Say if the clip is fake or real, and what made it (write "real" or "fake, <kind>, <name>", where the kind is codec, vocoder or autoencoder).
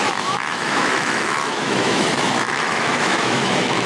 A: fake, autoencoder, DAC-VAE